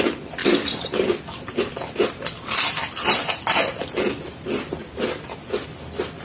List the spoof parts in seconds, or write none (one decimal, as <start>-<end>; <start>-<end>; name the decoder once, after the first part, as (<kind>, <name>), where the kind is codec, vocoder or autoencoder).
none